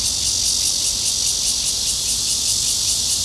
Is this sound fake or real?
real